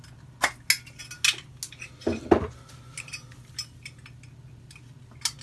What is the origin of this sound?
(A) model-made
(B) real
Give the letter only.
B